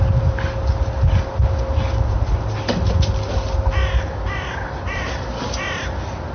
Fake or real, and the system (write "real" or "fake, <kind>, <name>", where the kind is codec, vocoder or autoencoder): real